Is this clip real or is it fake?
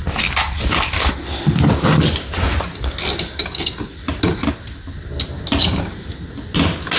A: real